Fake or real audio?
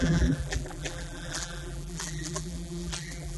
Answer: fake